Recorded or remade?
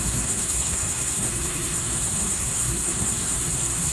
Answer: remade